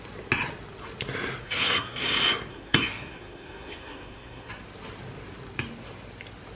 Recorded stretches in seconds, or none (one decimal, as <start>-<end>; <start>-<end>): 0.0-1.4; 2.0-2.5; 4.5-6.6